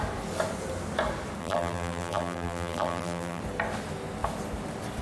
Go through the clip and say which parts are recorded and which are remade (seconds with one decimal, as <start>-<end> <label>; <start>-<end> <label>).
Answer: 0.0-1.4 recorded; 1.4-3.4 remade; 3.4-5.0 recorded